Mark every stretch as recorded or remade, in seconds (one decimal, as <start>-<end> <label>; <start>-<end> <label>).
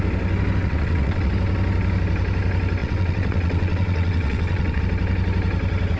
0.0-0.6 recorded; 0.6-1.3 remade; 1.3-2.8 recorded; 2.8-4.8 remade; 4.8-6.0 recorded